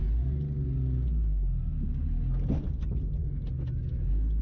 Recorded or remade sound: recorded